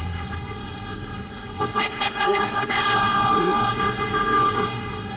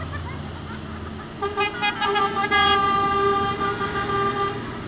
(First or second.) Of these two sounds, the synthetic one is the first